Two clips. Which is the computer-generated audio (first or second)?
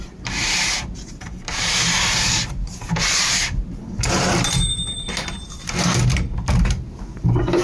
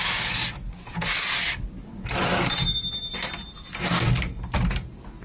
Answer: first